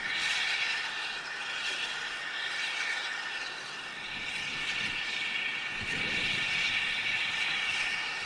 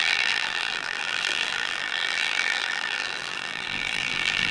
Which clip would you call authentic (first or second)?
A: first